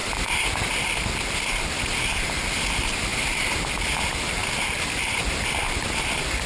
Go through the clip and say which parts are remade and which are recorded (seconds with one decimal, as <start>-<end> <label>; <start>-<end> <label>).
0.0-0.7 remade; 0.7-6.5 recorded